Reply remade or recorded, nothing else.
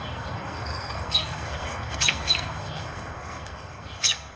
remade